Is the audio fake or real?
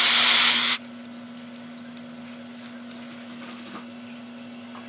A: real